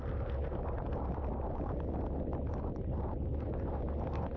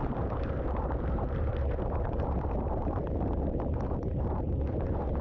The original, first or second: first